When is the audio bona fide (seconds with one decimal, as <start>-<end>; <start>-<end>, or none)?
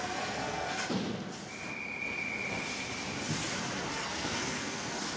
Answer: 0.8-3.9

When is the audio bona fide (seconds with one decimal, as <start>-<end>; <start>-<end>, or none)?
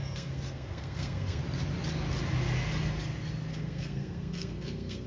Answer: 1.4-3.5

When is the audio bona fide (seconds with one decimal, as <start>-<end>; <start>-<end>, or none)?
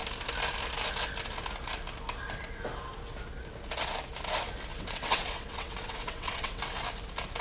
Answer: 0.0-4.7; 6.6-7.4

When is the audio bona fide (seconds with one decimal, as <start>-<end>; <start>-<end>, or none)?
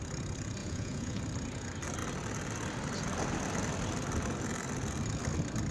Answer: 0.0-0.6; 1.2-5.7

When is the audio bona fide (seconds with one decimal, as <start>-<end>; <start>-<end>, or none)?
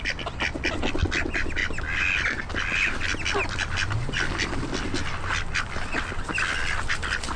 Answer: 0.0-7.4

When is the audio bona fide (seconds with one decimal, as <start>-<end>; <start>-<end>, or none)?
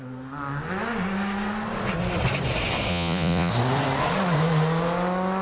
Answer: 0.0-2.9; 3.5-5.4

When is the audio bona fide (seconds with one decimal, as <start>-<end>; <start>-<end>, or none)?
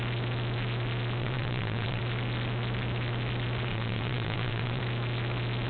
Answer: 0.0-1.2; 2.0-3.7; 4.8-5.7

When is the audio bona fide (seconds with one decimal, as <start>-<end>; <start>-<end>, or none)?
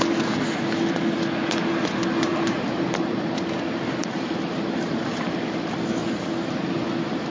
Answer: 0.0-2.3; 3.4-4.0; 5.4-7.3